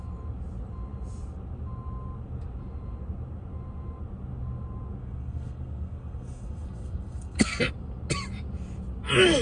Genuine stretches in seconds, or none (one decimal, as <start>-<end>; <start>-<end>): 0.0-5.0; 7.6-9.4